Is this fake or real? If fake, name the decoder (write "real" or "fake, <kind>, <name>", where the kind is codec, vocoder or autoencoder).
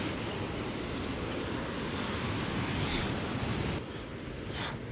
real